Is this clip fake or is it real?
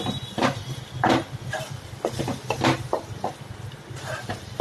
real